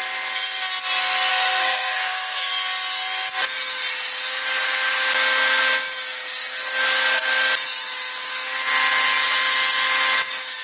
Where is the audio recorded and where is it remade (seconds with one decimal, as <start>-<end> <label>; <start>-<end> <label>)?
0.0-1.3 recorded; 1.3-2.5 remade; 2.5-10.6 recorded